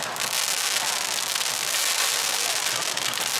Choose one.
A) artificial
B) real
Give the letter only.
B